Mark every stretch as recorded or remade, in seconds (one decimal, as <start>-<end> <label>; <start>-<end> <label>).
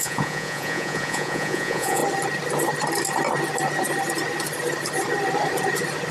0.0-2.0 remade; 2.0-6.1 recorded